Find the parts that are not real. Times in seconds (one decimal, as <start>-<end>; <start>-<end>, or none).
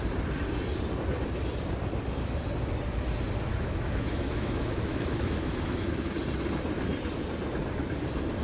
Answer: 3.5-6.1